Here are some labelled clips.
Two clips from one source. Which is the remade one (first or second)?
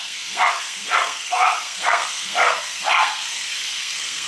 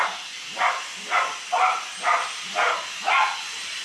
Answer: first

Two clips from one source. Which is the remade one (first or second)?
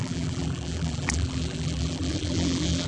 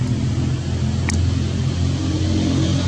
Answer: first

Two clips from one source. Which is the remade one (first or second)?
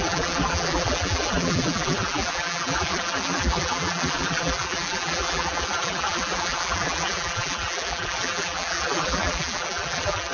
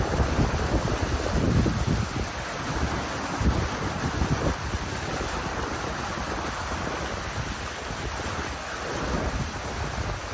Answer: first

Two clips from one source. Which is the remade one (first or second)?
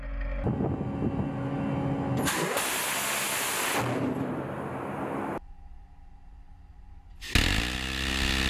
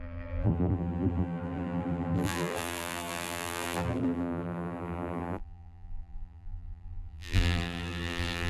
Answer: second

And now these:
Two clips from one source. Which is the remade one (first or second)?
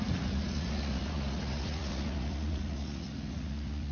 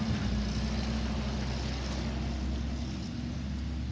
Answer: first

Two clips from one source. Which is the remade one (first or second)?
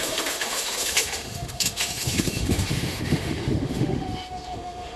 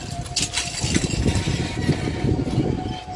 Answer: first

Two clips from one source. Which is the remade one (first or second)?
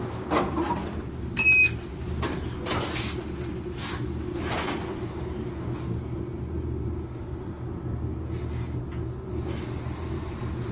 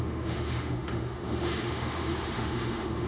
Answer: second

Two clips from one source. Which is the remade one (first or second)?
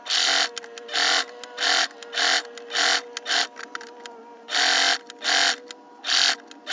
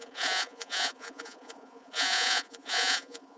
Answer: second